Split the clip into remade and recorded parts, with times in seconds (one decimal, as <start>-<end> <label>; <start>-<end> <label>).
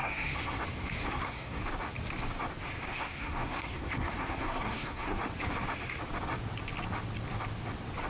0.0-0.6 remade; 0.6-1.0 recorded; 1.0-1.6 remade; 1.6-2.9 recorded; 2.9-5.2 remade; 5.2-8.1 recorded